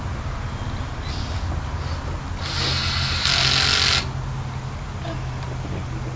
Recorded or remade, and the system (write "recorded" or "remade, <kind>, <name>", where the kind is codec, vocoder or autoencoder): recorded